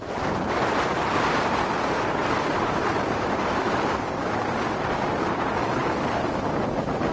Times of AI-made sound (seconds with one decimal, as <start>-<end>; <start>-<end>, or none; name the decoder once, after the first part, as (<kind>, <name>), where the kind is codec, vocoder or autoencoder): 2.2-4.2 (vocoder, BigVGAN v2); 5.8-6.6